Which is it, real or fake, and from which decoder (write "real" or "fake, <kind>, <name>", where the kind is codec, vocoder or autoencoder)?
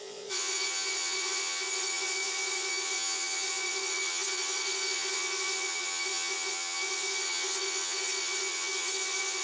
fake, vocoder, Vocos